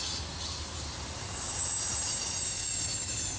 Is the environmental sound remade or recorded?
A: recorded